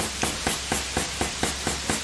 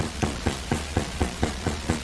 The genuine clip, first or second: first